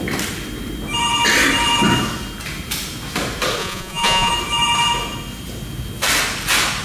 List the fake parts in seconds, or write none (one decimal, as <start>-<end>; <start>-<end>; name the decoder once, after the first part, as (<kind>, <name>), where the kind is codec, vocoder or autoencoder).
3.6-4.3 (vocoder, Vocos)